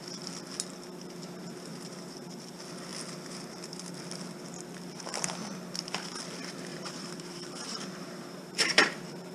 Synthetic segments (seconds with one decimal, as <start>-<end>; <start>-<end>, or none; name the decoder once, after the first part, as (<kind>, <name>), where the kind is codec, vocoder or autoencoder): 6.7-9.3 (vocoder, BigVGAN v2)